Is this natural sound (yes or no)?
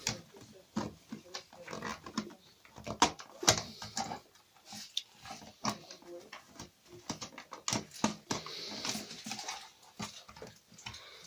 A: yes